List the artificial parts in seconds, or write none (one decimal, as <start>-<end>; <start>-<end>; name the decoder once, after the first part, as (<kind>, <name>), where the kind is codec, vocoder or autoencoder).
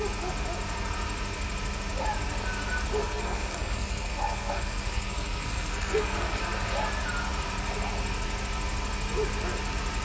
3.0-6.4 (codec, SNAC)